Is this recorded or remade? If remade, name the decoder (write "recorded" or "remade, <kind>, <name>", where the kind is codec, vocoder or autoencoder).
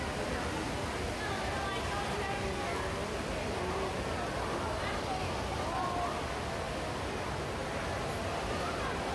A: recorded